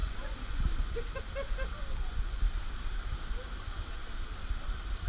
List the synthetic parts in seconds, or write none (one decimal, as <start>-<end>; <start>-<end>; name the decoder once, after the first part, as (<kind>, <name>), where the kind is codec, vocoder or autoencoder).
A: 0.0-0.8 (vocoder, Vocos); 1.9-2.4